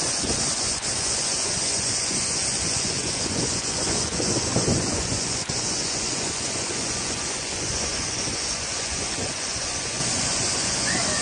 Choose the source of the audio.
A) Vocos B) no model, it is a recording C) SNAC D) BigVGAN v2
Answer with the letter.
A